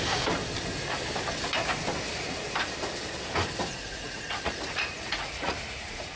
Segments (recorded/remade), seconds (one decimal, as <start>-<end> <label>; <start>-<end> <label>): 0.0-3.7 recorded; 3.7-6.2 remade